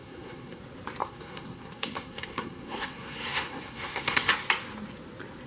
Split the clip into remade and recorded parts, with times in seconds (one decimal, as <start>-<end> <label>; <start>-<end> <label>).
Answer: 0.0-0.6 remade; 0.6-1.0 recorded; 1.0-4.3 remade; 4.3-5.5 recorded

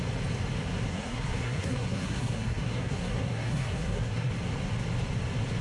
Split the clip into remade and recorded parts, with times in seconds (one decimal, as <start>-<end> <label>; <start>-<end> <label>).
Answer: 0.0-0.9 recorded; 0.9-4.3 remade; 4.3-5.6 recorded

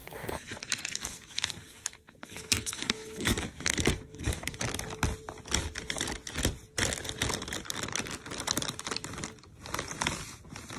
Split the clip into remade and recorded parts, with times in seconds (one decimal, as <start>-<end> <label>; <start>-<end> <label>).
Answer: 0.0-4.6 remade; 4.6-10.8 recorded

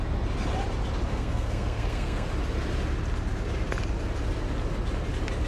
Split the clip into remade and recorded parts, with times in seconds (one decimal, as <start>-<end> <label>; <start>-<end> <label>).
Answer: 0.0-1.1 recorded; 1.1-2.3 remade; 2.3-5.5 recorded

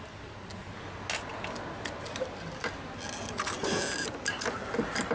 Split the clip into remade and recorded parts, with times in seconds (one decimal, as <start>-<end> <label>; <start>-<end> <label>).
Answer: 0.0-5.1 recorded